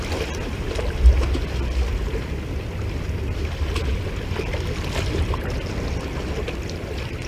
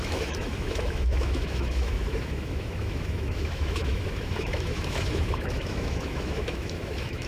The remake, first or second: second